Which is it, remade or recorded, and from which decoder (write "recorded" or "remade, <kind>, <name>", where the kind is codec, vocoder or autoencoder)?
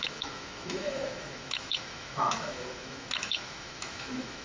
remade, autoencoder, DAC-VAE